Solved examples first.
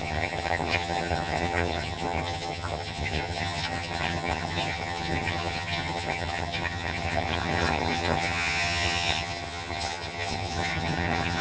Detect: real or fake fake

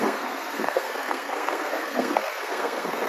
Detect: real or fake fake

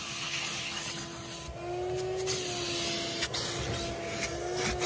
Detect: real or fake real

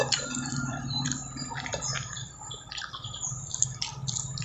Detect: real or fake fake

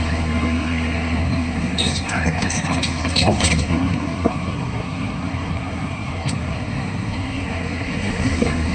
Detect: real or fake fake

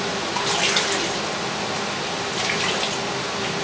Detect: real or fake real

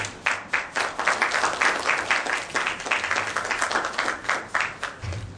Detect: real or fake real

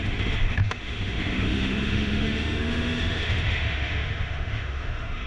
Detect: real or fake fake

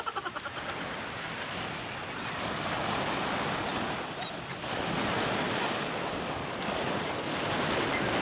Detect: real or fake real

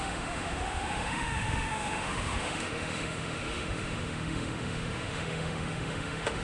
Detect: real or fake fake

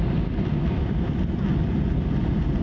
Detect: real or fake real